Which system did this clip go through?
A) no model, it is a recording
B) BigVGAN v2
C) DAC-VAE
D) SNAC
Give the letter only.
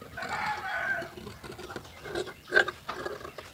A